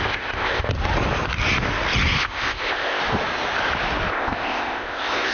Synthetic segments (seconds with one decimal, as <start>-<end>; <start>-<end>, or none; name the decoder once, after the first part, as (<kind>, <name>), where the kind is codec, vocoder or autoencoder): 0.0-0.7 (codec, ZipCodec); 2.2-3.0; 4.1-5.3